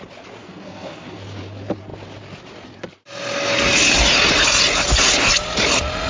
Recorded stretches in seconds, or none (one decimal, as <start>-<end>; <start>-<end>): 0.0-0.4; 1.2-6.1